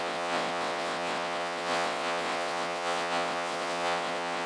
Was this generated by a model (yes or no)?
yes